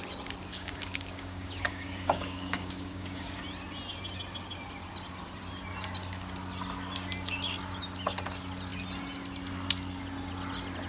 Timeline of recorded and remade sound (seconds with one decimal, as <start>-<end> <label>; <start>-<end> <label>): 0.0-0.5 recorded; 0.5-3.4 remade; 3.4-10.9 recorded